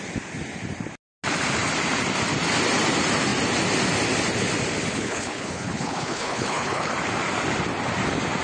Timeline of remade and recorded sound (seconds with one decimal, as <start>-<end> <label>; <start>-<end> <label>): 0.0-4.9 recorded; 4.9-6.9 remade; 6.9-8.4 recorded